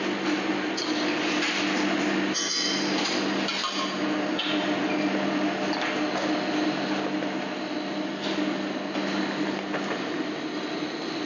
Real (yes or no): yes